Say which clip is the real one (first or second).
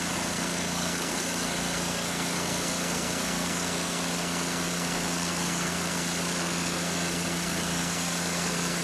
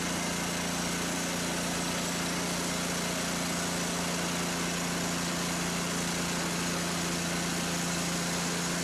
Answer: second